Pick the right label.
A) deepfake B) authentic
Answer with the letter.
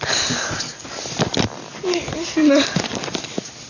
B